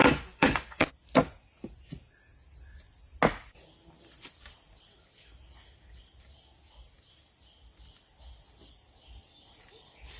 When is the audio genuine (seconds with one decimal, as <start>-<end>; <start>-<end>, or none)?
0.9-10.2